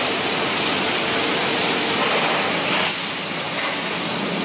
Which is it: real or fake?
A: real